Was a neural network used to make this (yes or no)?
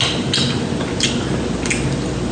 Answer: no